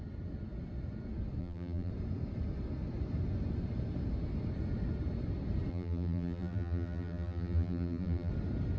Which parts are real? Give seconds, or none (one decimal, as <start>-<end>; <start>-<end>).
0.0-1.4; 1.9-5.7; 8.3-8.8